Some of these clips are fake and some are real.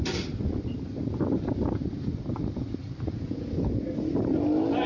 real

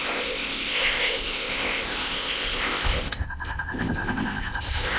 fake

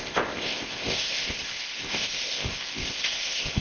fake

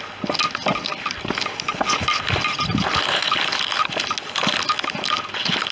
real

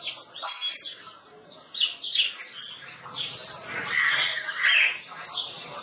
real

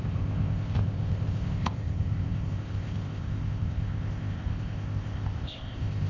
fake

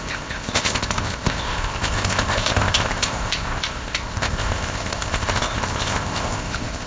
fake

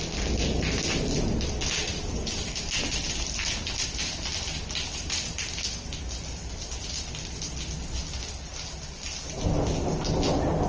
real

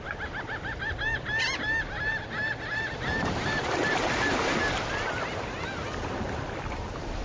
real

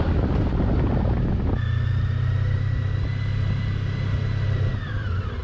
real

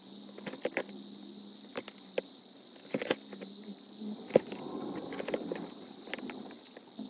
real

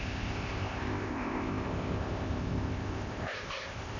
fake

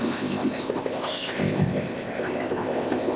fake